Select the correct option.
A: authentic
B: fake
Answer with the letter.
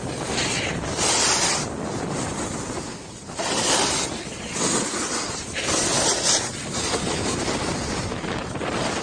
A